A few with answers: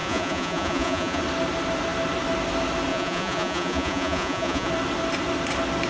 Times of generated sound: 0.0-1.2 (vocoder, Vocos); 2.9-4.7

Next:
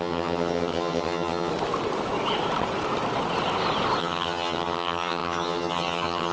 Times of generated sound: 0.0-1.5 (vocoder, HiFi-GAN); 4.0-6.3

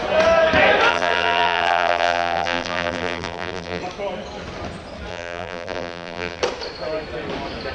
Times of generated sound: 0.9-3.8 (vocoder, BigVGAN v2); 5.1-6.4

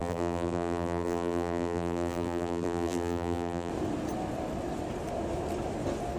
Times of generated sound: 0.0-3.7 (vocoder, BigVGAN v2)

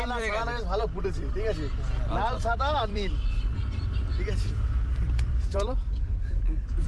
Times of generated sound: 0.0-0.4 (vocoder, BigVGAN v2); 2.8-6.9

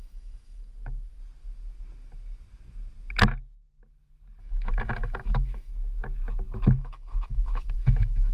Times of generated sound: 0.0-0.6 (autoencoder, DAC-VAE); 4.4-5.7; 6.8-8.3

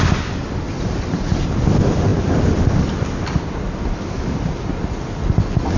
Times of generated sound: 2.1-4.2 (vocoder, BigVGAN v2)